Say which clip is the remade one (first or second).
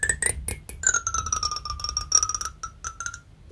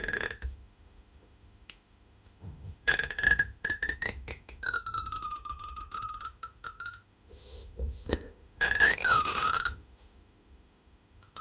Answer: second